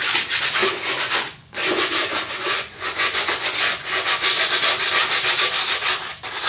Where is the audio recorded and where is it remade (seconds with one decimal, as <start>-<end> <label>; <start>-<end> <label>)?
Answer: 0.0-0.6 recorded; 0.6-4.5 remade; 4.5-6.5 recorded